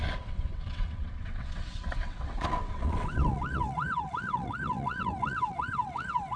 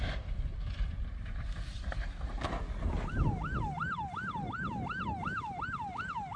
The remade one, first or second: first